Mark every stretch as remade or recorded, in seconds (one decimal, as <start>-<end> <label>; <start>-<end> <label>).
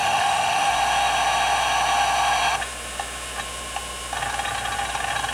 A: 0.0-0.7 remade; 0.7-5.3 recorded